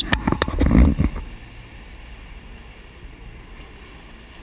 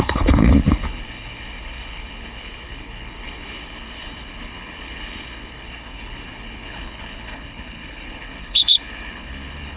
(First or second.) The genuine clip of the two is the first